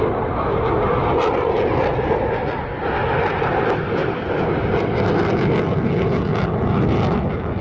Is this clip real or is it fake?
real